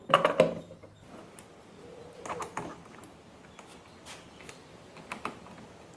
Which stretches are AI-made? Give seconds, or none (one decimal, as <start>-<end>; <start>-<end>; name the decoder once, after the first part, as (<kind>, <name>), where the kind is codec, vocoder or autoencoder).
none